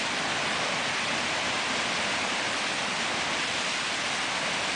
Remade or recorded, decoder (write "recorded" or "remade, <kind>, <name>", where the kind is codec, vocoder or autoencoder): recorded